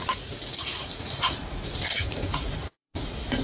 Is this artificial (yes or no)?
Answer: yes